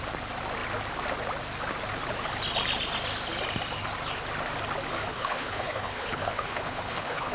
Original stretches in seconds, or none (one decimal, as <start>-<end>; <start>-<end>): 0.0-5.0